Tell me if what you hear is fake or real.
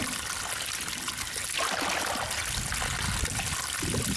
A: real